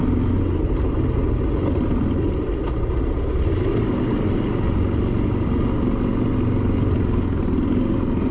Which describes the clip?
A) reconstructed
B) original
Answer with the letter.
B